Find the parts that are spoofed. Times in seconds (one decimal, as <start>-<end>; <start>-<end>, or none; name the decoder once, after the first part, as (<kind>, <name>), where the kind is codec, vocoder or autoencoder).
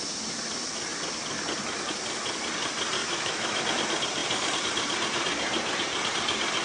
3.0-3.6 (autoencoder, DAC-VAE)